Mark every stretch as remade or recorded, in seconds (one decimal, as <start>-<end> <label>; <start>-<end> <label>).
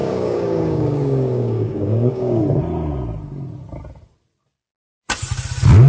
0.0-2.4 remade; 2.4-5.9 recorded